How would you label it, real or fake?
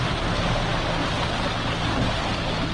real